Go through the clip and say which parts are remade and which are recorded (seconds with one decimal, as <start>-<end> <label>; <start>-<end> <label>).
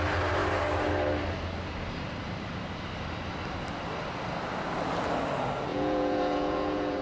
0.0-5.7 recorded; 5.7-7.0 remade